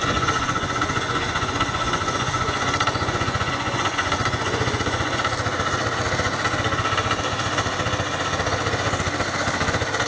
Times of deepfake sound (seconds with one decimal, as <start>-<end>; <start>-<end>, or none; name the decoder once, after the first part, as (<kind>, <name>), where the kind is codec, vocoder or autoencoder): 0.0-5.2 (vocoder, Vocos)